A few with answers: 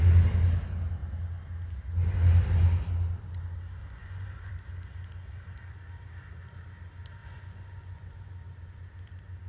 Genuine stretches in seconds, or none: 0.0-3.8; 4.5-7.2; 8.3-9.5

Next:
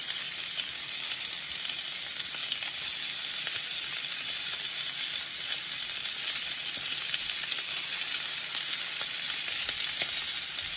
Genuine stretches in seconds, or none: 0.0-10.8

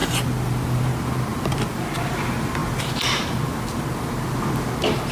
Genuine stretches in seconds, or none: 0.0-5.1

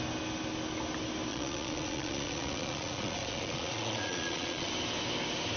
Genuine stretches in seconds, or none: 0.0-1.3; 4.7-5.6

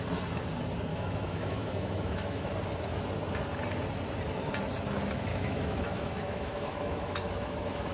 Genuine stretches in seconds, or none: 0.0-0.9; 2.5-5.3

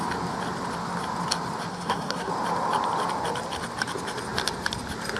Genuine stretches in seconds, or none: 0.0-1.7; 2.3-5.2

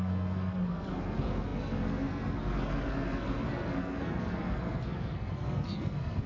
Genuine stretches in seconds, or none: none